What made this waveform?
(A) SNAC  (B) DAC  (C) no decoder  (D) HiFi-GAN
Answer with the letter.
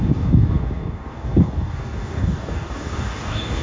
B